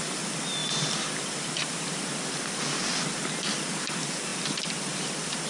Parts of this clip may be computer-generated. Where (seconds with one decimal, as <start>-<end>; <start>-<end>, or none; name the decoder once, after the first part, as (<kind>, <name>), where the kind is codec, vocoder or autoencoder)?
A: none